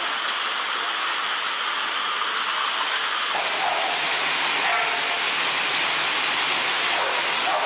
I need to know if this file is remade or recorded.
recorded